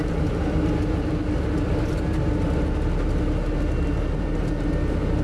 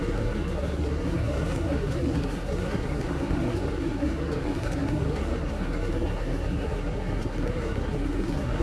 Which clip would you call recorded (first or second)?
first